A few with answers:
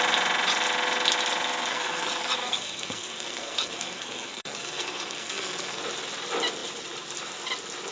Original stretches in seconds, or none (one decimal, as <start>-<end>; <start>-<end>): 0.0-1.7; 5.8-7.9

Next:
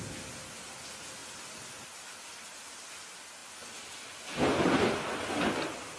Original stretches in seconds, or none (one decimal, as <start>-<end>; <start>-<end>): 0.0-6.0

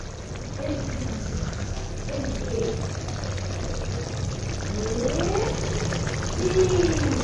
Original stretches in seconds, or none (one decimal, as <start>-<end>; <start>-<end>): 0.0-1.2; 1.9-7.2